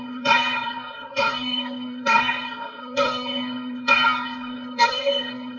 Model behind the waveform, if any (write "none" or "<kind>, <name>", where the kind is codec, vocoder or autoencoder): codec, SNAC